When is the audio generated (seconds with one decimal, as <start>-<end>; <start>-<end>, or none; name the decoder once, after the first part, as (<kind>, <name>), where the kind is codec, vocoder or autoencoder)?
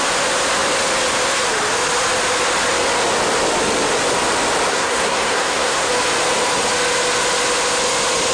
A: 4.7-5.9 (codec, SNAC)